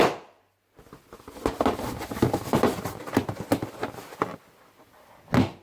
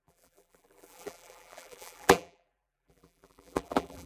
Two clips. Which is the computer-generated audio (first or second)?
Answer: second